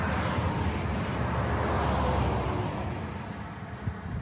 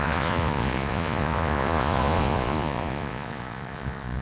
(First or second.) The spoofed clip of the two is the second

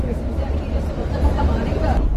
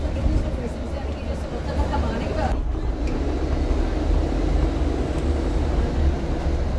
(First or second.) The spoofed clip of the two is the first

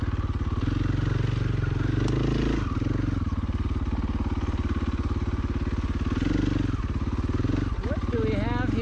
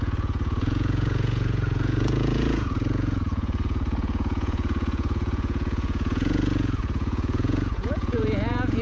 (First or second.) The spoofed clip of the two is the second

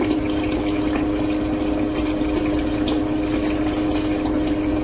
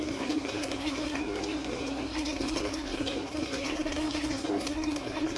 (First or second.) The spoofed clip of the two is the second